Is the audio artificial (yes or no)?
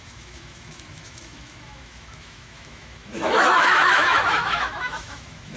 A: yes